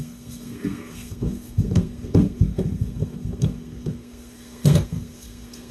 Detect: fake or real fake